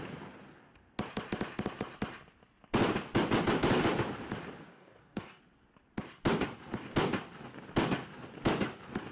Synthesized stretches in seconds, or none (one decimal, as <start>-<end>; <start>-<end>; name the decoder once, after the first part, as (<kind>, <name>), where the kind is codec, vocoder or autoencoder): 4.7-5.4 (codec, DAC)